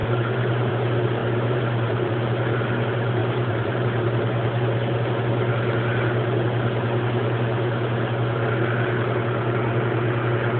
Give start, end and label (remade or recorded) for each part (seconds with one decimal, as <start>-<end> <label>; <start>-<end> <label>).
0.0-0.7 remade; 0.7-1.2 recorded; 1.2-2.1 remade; 2.1-3.2 recorded; 3.2-5.1 remade; 5.1-10.6 recorded